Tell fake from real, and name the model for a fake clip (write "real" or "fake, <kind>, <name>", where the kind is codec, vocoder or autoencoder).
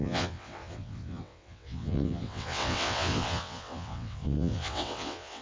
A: fake, vocoder, WaveNeXt